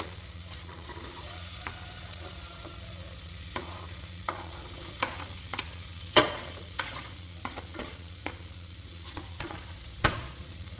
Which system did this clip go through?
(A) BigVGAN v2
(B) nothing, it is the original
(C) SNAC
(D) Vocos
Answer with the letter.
D